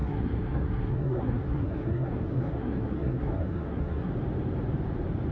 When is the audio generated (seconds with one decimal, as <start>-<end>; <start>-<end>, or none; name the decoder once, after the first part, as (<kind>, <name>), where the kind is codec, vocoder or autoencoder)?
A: 0.0-4.1 (codec, SNAC)